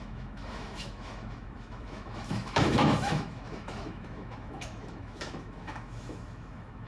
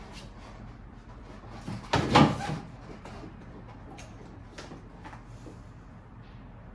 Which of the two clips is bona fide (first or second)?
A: second